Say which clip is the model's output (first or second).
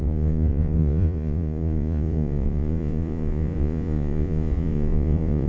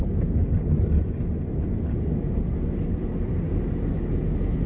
first